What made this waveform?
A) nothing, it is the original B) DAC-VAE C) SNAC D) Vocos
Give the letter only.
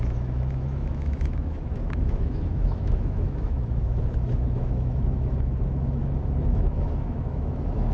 B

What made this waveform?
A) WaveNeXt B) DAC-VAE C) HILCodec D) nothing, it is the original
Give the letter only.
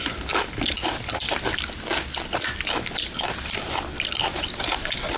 D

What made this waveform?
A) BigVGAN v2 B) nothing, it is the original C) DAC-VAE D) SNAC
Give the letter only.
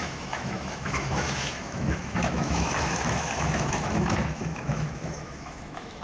C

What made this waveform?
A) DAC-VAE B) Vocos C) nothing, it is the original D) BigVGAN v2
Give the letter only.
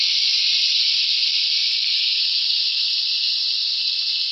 C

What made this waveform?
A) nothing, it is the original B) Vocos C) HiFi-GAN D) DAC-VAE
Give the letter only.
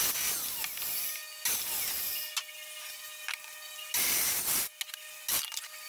A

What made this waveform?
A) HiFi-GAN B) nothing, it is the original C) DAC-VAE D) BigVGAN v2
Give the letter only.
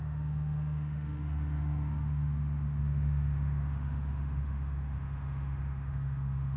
C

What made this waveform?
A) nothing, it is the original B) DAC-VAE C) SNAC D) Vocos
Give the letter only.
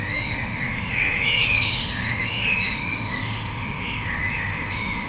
B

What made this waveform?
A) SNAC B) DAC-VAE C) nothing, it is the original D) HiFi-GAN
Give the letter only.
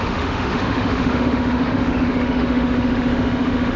B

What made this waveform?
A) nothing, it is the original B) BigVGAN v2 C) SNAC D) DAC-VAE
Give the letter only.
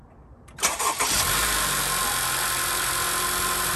A